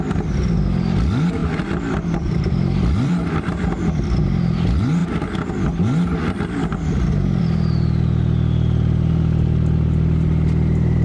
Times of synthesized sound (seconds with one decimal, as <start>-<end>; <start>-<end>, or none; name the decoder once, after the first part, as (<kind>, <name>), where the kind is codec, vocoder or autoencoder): 1.4-4.2 (vocoder, BigVGAN v2)